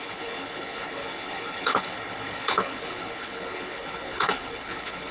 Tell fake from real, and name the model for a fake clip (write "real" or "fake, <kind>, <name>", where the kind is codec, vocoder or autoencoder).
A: fake, codec, HILCodec